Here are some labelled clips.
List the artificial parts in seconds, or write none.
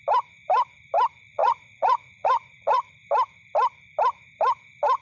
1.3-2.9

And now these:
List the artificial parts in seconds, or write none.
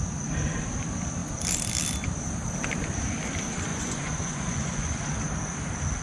3.7-4.9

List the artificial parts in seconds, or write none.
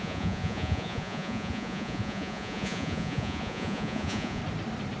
0.0-4.4